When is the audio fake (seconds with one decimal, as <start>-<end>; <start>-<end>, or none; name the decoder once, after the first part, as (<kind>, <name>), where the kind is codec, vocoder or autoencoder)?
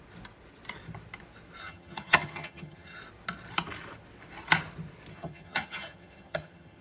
1.6-3.0 (vocoder, HiFi-GAN); 5.1-6.8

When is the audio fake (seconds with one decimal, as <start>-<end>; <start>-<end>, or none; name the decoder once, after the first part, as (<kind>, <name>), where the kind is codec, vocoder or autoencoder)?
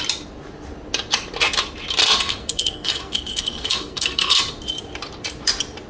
2.0-4.4 (codec, SNAC)